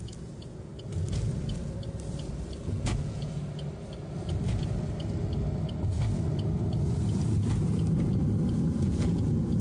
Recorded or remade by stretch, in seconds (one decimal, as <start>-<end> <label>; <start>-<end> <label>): 0.0-0.7 remade; 0.7-2.7 recorded; 2.7-3.4 remade; 3.4-8.5 recorded; 8.5-9.6 remade